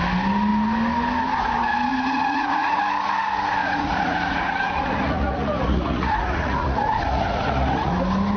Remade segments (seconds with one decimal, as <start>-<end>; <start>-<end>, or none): 1.9-2.8; 3.6-7.9